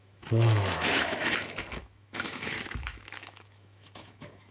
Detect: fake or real fake